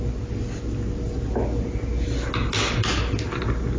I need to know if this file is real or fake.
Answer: real